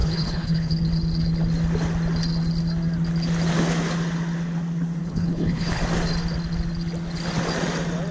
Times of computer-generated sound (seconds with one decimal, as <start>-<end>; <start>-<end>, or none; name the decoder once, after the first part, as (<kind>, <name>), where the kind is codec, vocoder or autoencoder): 0.0-0.7 (codec, HILCodec); 5.0-5.8